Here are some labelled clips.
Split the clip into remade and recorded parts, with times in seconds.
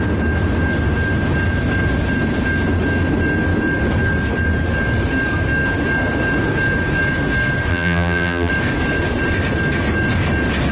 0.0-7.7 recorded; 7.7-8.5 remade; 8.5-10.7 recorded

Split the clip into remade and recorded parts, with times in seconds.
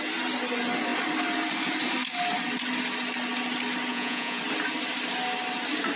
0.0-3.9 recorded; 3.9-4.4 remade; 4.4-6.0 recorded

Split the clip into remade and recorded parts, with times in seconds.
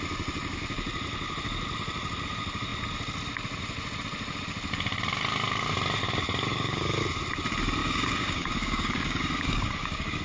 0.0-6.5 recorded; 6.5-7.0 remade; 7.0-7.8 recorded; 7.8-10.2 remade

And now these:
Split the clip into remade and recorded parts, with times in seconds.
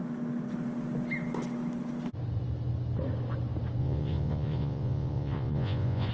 0.0-3.8 recorded; 3.8-6.1 remade